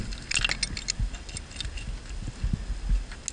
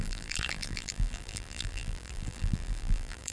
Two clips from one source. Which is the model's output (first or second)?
second